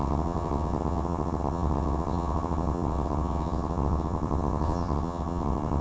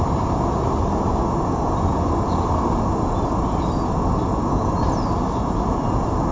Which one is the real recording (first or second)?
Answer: second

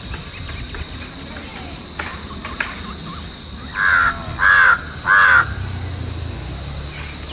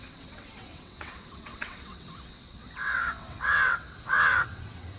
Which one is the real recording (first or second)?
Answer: first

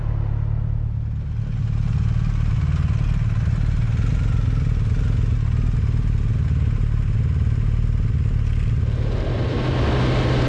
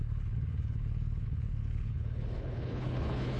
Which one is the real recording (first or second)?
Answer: first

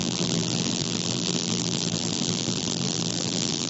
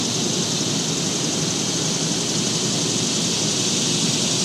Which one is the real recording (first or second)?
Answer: second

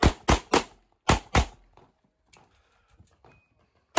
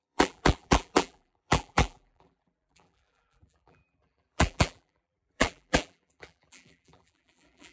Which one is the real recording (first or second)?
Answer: first